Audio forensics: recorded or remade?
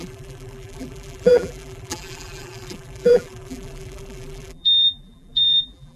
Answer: remade